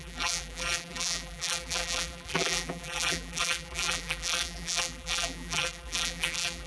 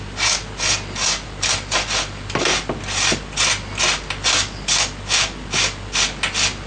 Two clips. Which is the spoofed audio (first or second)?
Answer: first